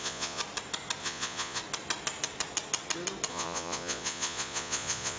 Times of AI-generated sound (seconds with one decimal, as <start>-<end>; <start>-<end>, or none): 0.0-0.4; 1.0-1.6; 3.3-5.2